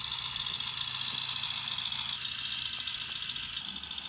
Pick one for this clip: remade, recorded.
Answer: recorded